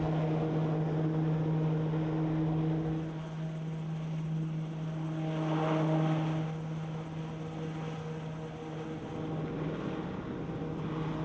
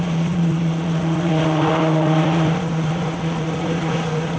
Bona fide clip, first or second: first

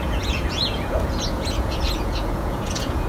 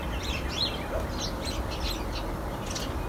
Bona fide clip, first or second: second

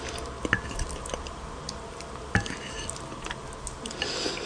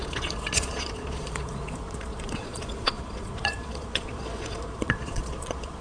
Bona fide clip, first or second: first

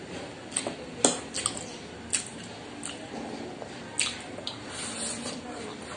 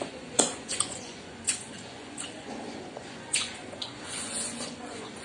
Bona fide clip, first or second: first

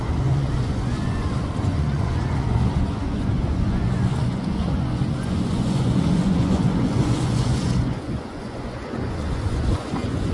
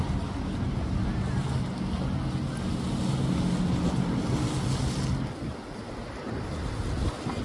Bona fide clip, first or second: second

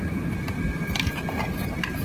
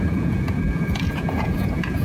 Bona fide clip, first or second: first